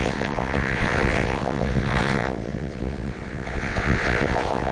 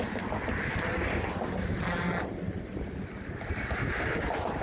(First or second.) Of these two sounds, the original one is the second